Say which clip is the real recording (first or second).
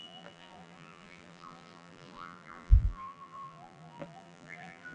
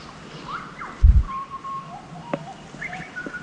second